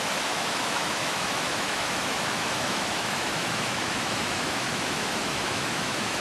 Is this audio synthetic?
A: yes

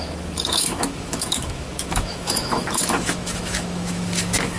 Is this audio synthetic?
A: yes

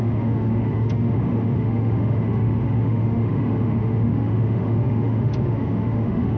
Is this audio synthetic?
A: yes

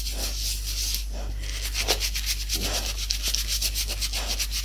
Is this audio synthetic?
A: no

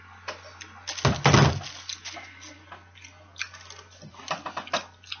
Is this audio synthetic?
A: no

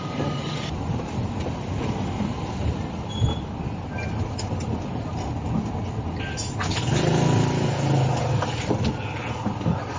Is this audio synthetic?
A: no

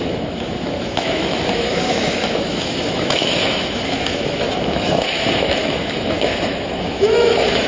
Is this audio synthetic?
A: yes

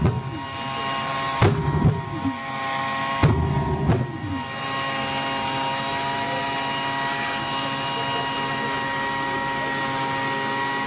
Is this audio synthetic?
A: no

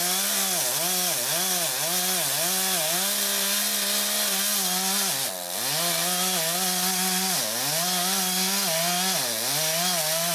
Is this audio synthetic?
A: no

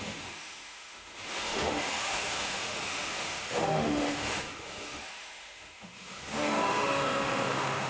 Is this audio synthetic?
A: yes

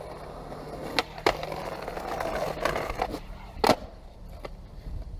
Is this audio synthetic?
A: no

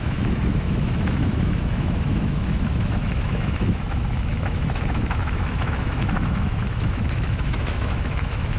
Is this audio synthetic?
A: yes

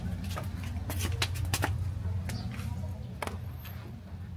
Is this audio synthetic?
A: no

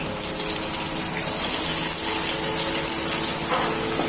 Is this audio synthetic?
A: no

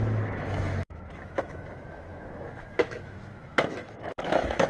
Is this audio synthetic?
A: yes